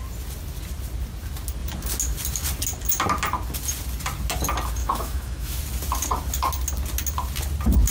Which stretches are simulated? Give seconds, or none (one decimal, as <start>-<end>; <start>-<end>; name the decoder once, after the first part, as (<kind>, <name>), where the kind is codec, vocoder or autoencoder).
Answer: 4.8-5.6 (autoencoder, DAC-VAE)